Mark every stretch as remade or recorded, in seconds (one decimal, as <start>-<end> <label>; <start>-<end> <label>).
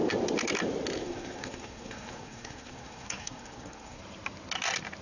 0.0-1.0 recorded; 1.0-4.0 remade; 4.0-5.0 recorded